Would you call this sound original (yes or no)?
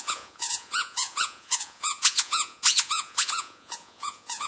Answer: no